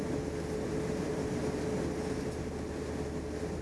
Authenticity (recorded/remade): recorded